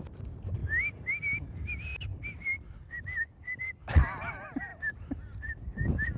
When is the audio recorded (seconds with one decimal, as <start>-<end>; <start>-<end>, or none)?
0.0-6.2